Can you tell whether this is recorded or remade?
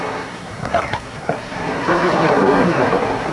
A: remade